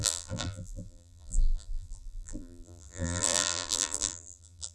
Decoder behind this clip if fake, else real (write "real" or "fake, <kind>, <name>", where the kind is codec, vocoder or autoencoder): fake, vocoder, BigVGAN v2